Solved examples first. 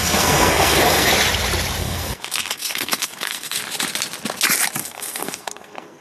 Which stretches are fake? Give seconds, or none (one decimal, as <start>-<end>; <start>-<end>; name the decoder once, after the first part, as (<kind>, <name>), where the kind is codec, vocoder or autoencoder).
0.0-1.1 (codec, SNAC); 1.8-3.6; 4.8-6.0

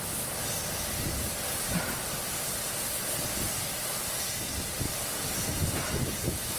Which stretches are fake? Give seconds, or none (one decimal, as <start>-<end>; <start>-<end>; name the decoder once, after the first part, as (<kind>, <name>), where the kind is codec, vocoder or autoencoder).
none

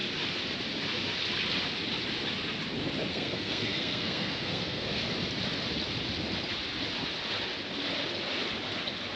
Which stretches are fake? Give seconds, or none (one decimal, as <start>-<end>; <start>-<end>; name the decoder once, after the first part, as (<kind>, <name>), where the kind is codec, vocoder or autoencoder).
3.1-5.0 (codec, SNAC)

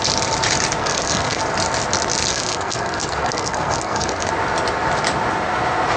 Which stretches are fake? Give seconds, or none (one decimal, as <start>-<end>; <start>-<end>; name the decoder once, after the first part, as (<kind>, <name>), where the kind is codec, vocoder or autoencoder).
0.8-1.4 (codec, SNAC); 2.3-4.3

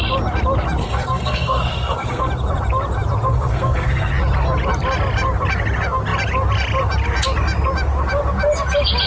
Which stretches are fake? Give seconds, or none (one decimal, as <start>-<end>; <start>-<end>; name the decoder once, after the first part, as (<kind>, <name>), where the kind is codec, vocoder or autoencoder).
0.8-2.3 (codec, SNAC); 3.3-4.1

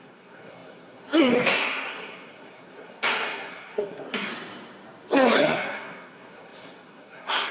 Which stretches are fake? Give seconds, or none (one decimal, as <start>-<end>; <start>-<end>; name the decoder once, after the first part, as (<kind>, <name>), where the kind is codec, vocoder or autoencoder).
0.0-4.3 (codec, SNAC); 5.1-7.5

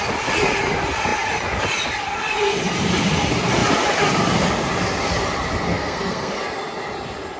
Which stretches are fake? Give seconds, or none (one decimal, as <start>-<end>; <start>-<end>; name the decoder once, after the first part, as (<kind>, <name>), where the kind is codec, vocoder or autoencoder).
5.7-6.3 (codec, SNAC)

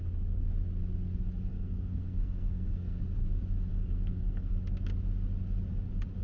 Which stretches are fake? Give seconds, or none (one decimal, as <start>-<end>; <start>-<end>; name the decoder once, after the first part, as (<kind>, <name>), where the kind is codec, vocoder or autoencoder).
1.5-3.0 (codec, SNAC); 3.7-4.5